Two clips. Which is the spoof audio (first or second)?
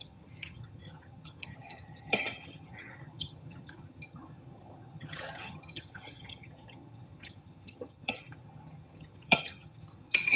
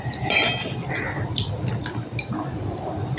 first